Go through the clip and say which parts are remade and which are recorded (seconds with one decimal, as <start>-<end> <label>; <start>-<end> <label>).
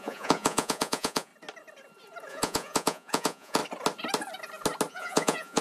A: 0.0-1.3 remade; 1.3-2.3 recorded; 2.3-3.6 remade; 3.6-4.9 recorded; 4.9-5.6 remade